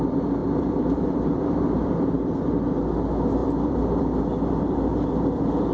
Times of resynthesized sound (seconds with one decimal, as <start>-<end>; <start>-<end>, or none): 0.4-2.5; 3.4-5.7

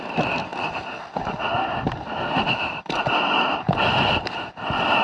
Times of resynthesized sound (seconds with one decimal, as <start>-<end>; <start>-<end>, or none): 0.0-0.5; 3.4-5.0

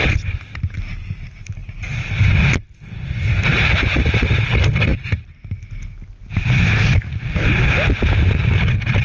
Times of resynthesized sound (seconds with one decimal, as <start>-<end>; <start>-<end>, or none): none

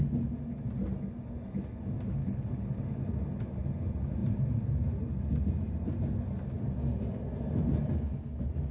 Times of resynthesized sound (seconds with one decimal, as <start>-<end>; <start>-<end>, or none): 2.2-2.8

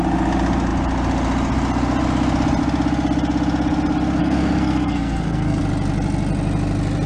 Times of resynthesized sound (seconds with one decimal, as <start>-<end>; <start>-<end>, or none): 4.2-5.6

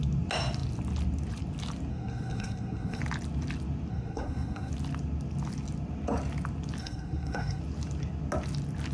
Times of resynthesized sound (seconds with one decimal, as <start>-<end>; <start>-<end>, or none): 1.9-3.0; 3.9-4.7; 6.8-7.6

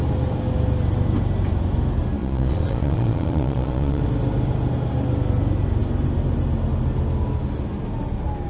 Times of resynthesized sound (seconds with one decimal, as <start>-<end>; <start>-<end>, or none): 2.2-4.0

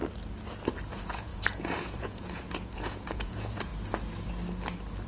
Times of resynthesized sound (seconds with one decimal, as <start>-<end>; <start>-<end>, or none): 0.9-3.7